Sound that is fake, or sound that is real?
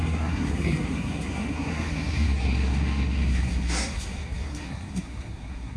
fake